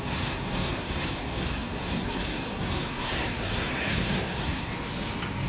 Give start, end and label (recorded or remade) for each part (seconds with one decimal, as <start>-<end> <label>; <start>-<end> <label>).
0.0-4.7 remade; 4.7-5.5 recorded